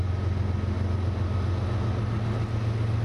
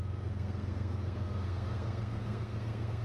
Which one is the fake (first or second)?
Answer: second